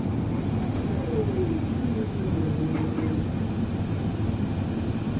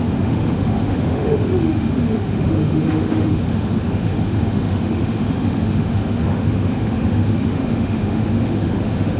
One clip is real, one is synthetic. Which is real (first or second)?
first